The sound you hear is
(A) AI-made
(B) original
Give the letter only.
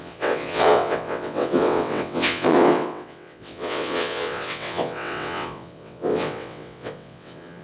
A